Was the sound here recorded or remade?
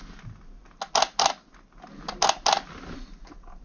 recorded